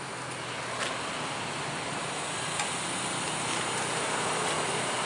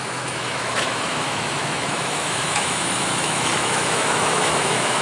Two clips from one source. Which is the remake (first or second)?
second